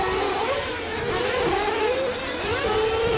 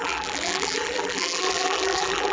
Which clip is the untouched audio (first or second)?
first